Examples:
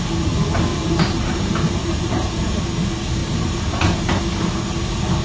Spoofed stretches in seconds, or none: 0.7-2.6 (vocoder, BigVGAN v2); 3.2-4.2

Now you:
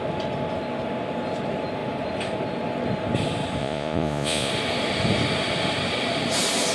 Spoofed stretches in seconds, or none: 3.6-4.5 (vocoder, Vocos)

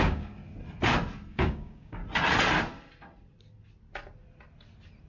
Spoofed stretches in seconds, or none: 0.0-0.4 (codec, DAC); 1.3-2.0

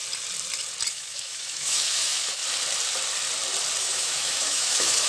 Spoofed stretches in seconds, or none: 0.9-2.4 (autoencoder, DAC-VAE); 3.8-5.1

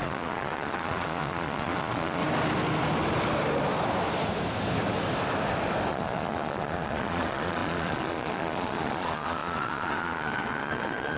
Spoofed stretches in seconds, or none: 0.0-2.2 (vocoder, Vocos); 5.9-11.2

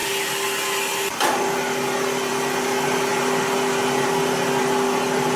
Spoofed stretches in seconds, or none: none

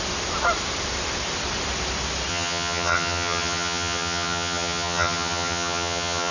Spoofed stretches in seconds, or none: 2.3-6.3 (vocoder, HiFi-GAN)

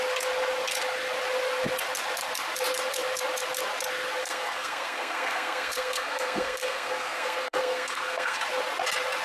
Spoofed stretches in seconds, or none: 4.2-8.4 (codec, SNAC)